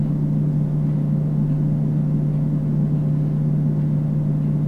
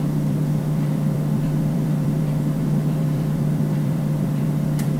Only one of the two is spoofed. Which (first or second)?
second